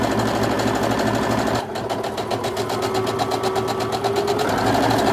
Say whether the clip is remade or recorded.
recorded